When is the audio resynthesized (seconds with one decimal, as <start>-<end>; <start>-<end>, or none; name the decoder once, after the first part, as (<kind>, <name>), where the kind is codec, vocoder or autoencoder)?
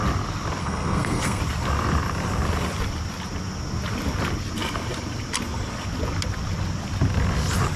0.6-1.4 (codec, SNAC)